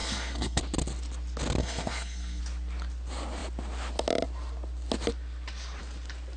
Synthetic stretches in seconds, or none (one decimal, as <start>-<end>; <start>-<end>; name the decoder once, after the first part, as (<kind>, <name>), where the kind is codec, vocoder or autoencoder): 0.0-0.6 (codec, SNAC); 1.6-2.4